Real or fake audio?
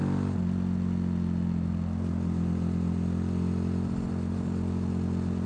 real